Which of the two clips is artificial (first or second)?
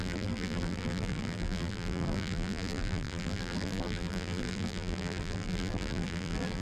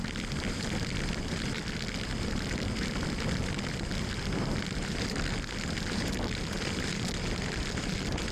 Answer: first